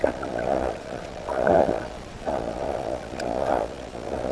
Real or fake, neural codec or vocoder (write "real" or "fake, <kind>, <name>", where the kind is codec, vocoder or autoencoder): fake, vocoder, Vocos